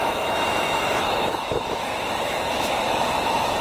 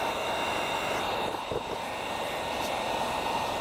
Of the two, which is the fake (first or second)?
first